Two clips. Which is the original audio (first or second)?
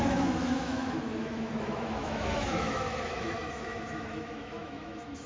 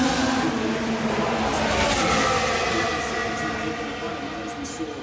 second